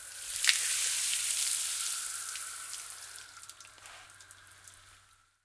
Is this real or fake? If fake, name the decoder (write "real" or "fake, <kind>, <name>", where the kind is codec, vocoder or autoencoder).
real